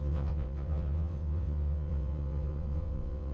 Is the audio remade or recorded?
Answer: remade